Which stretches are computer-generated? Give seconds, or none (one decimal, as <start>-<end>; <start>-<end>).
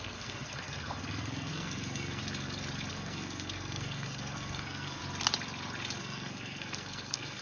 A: 0.0-2.2; 2.9-5.0; 6.0-7.4